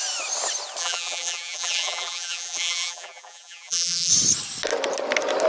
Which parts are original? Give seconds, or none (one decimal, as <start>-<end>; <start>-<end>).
0.0-0.8; 4.1-5.5